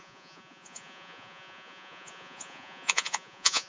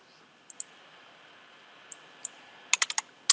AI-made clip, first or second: first